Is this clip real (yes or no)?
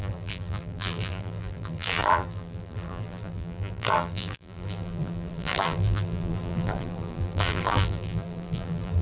no